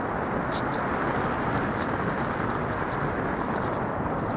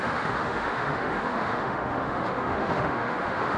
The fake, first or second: second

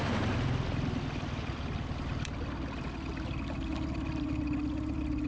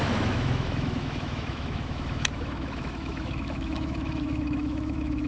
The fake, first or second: second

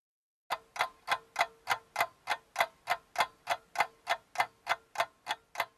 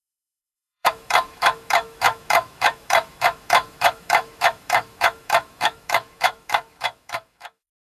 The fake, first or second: second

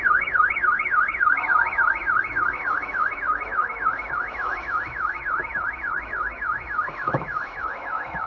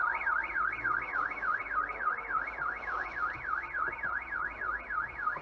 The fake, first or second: first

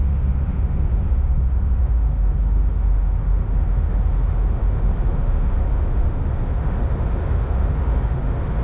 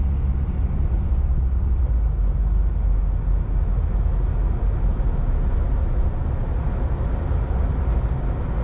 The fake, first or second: first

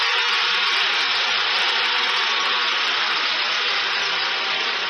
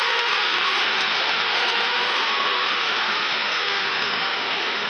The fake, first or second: second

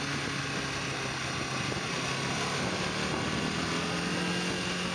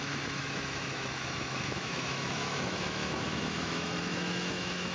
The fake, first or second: second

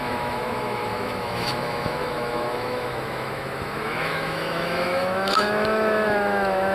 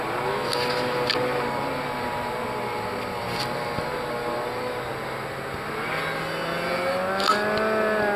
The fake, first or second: first